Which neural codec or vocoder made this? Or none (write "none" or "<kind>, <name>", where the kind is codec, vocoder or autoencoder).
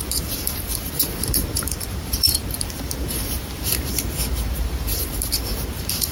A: vocoder, BigVGAN v2